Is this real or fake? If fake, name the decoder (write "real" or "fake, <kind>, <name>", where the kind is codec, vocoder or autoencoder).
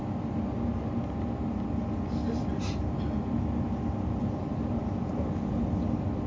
real